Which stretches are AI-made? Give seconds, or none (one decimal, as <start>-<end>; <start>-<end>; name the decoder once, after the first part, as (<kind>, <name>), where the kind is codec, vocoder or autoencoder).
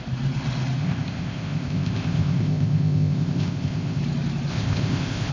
0.8-4.0 (codec, ZipCodec); 4.5-5.3